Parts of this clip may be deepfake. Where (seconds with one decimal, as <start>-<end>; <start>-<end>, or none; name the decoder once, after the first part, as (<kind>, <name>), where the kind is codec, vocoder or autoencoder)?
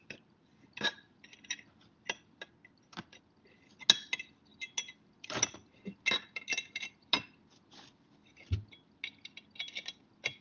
none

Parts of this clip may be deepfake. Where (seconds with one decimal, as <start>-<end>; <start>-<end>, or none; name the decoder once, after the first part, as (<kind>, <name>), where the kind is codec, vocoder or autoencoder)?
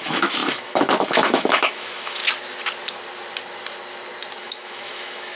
0.0-2.2 (autoencoder, DAC-VAE); 4.4-5.4